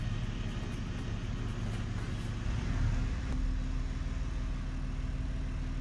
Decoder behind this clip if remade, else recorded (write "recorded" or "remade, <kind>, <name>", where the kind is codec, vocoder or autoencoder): recorded